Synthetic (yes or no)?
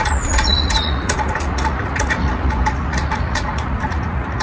yes